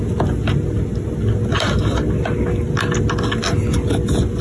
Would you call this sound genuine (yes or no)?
yes